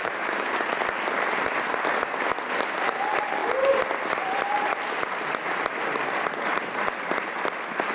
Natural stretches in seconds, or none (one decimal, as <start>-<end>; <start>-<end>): 0.5-7.9